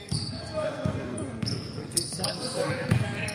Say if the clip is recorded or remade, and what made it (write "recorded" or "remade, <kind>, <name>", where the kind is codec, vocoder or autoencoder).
remade, codec, SNAC